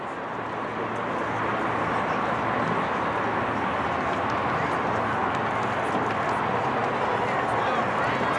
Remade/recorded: recorded